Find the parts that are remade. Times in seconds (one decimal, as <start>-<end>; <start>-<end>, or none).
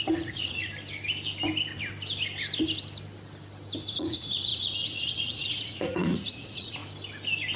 0.0-0.6; 3.9-6.8